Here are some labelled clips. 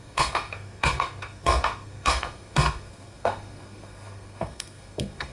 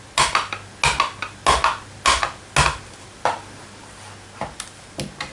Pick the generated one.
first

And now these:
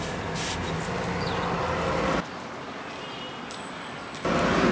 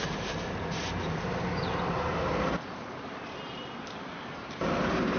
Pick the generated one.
second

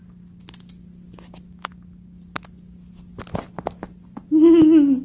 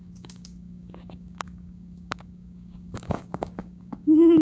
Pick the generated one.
second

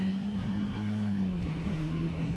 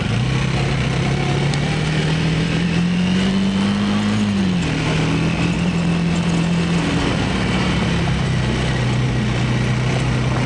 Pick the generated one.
first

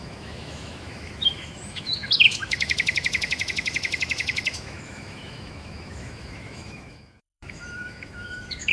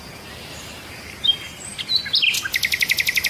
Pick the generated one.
first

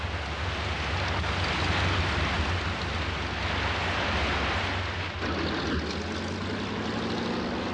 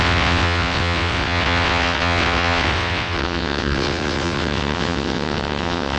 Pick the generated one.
second